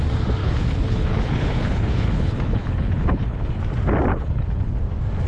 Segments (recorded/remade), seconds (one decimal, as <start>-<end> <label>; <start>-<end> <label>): 0.0-0.4 recorded; 0.4-3.6 remade; 3.6-4.1 recorded; 4.1-4.7 remade; 4.7-5.3 recorded